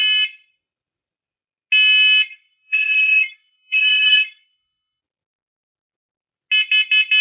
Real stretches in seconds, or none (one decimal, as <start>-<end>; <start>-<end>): 0.0-2.3; 5.0-7.2